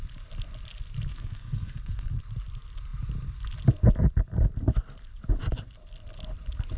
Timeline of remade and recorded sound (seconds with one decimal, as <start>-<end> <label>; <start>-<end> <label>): 0.0-1.1 recorded; 1.1-2.2 remade; 2.2-6.8 recorded